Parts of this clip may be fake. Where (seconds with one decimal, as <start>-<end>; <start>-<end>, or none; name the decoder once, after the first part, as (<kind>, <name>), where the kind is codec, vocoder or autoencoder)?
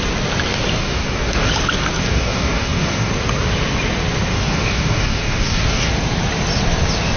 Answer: 0.8-1.5 (codec, DAC); 2.0-3.1; 4.3-5.9